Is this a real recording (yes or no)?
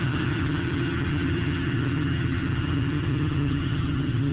no